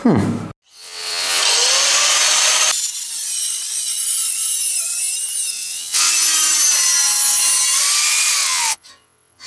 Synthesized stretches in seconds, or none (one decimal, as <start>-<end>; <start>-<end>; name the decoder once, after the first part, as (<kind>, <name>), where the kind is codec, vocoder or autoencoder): 0.7-1.4 (vocoder, WaveNeXt); 5.5-6.1; 8.4-9.5